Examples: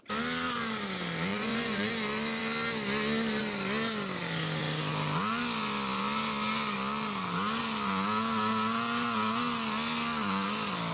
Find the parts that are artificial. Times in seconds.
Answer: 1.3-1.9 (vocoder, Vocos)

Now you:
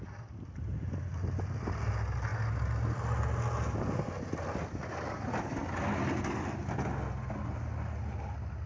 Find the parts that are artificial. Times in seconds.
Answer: none

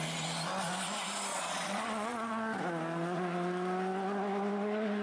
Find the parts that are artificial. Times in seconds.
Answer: 1.3-2.3 (vocoder, Vocos)